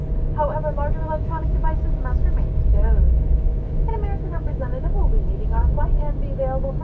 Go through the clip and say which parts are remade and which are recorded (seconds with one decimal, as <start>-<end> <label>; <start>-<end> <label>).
0.0-1.0 recorded; 1.0-1.6 remade; 1.6-2.7 recorded; 2.7-5.8 remade; 5.8-6.8 recorded